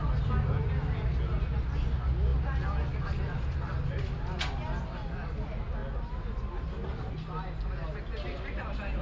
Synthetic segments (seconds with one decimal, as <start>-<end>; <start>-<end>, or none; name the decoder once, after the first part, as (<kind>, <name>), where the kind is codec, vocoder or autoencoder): none